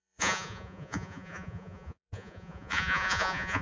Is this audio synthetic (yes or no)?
yes